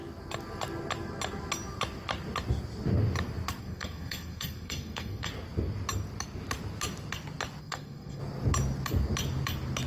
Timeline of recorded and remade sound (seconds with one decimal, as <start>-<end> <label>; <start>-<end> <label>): 0.0-3.6 recorded; 3.6-5.3 remade; 5.3-7.6 recorded; 7.6-8.2 remade; 8.2-9.9 recorded